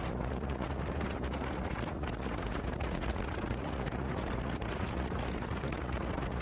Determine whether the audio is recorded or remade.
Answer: remade